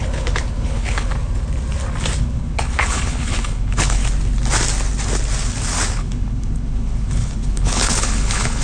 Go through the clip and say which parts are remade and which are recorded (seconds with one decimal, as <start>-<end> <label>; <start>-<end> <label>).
0.0-1.1 remade; 1.1-2.2 recorded; 2.2-4.0 remade; 4.0-5.9 recorded; 5.9-8.6 remade